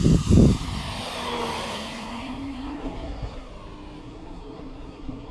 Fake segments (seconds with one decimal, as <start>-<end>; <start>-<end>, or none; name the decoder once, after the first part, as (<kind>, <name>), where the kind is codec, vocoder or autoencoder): 1.7-3.5 (codec, SNAC); 4.0-5.3